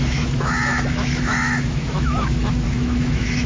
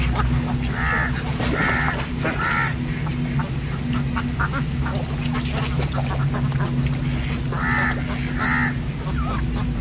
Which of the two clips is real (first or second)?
second